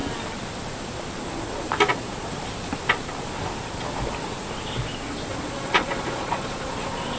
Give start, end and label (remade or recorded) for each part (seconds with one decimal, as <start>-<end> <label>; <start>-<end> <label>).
0.0-1.9 recorded; 1.9-2.4 remade; 2.4-5.3 recorded; 5.3-7.2 remade